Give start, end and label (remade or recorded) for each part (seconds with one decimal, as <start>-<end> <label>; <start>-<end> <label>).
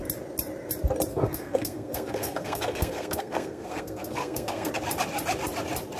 0.0-1.1 recorded; 1.1-4.7 remade; 4.7-6.0 recorded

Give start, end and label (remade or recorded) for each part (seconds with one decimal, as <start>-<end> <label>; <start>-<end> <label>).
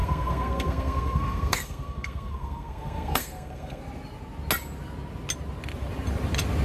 0.0-3.8 remade; 3.8-6.6 recorded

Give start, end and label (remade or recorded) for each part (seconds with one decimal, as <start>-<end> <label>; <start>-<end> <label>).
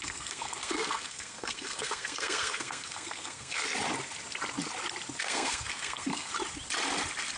0.0-3.7 remade; 3.7-5.2 recorded; 5.2-6.3 remade; 6.3-7.4 recorded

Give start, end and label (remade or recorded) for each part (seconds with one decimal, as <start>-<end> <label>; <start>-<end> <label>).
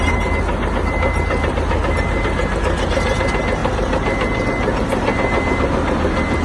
0.0-6.4 recorded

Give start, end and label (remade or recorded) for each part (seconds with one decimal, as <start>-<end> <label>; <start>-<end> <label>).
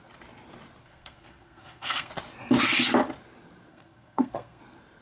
0.0-0.8 recorded; 0.8-2.1 remade; 2.1-3.7 recorded; 3.7-4.6 remade; 4.6-5.0 recorded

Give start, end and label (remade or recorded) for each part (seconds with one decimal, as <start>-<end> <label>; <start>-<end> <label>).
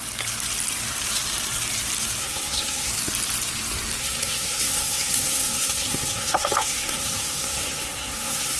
0.0-2.2 recorded; 2.2-2.9 remade; 2.9-4.0 recorded; 4.0-8.6 remade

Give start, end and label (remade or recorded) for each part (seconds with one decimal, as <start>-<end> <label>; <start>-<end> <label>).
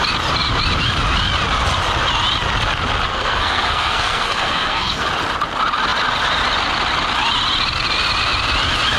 0.0-3.1 recorded; 3.1-5.1 remade; 5.1-9.0 recorded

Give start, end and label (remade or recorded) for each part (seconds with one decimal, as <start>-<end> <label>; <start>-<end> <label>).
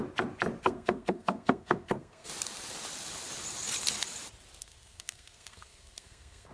0.0-0.6 recorded; 0.6-2.3 remade; 2.3-4.6 recorded; 4.6-6.5 remade